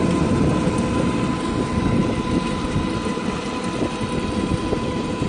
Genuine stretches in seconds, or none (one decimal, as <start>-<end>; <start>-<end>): 0.0-5.3